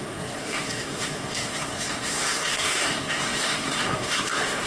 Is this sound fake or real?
fake